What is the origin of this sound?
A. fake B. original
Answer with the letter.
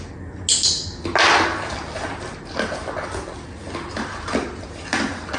B